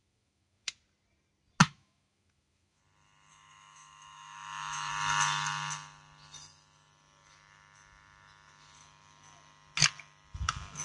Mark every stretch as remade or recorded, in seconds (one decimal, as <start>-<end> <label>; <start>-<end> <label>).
0.0-0.7 remade; 0.7-1.6 recorded; 1.6-2.8 remade; 2.8-3.3 recorded; 3.3-4.9 remade; 4.9-10.8 recorded